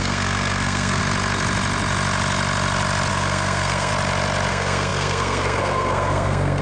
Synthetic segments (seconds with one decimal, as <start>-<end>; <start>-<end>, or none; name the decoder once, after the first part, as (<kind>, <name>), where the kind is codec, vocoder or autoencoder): 0.0-1.0 (codec, SNAC); 3.1-3.9; 4.5-6.6